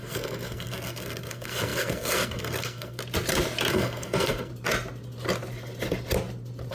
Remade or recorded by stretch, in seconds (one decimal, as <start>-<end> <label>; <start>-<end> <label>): 0.0-3.0 remade; 3.0-3.7 recorded; 3.7-4.5 remade; 4.5-6.7 recorded